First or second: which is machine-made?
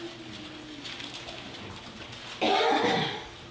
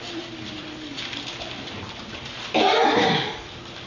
second